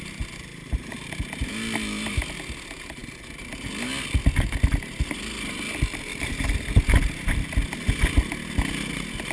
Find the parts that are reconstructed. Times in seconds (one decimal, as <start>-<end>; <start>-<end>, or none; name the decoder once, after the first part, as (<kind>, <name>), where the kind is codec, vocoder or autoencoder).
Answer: 0.5-1.1 (vocoder, BigVGAN v2)